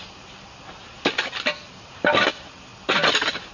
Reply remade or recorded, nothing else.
recorded